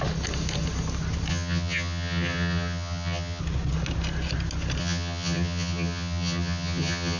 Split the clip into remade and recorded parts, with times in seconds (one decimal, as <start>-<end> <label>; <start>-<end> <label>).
0.0-1.3 recorded; 1.3-3.4 remade; 3.4-4.8 recorded; 4.8-7.2 remade

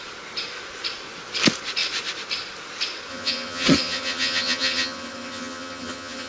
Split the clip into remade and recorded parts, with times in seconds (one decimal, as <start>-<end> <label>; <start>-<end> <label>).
0.0-3.1 recorded; 3.1-6.3 remade